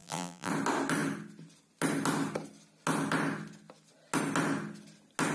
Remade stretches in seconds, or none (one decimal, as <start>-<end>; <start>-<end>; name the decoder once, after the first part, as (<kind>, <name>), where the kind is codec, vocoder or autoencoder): 0.0-0.5 (vocoder, BigVGAN v2)